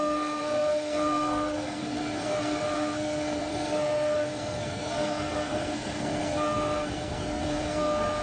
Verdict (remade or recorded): remade